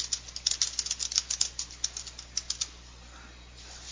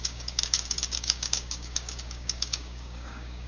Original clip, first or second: first